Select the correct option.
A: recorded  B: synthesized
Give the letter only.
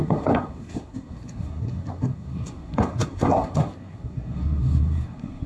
B